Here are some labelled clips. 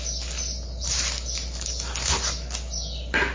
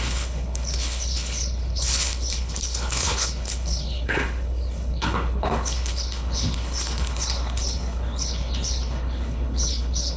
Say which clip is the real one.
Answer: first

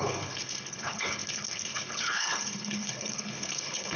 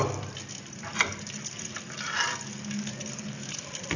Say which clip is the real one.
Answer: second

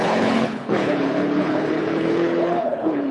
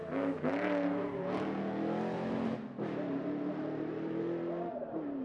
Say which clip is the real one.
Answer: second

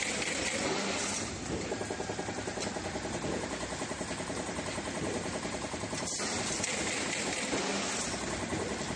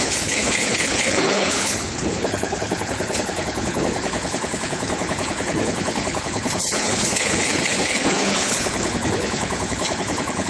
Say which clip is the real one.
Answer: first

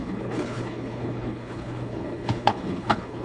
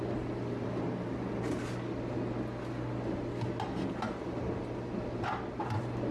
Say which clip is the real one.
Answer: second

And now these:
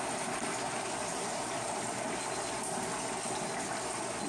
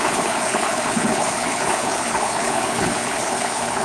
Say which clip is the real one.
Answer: first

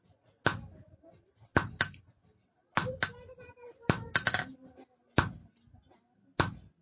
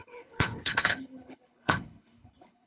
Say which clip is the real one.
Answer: first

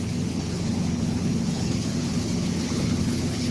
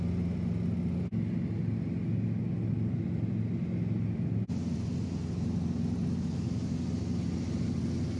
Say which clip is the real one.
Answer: second